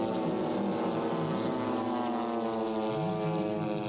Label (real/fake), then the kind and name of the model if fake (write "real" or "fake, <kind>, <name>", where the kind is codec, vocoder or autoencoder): real